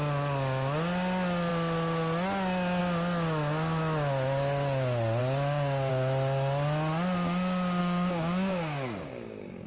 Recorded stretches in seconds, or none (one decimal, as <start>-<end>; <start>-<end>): 0.0-5.2; 5.9-7.8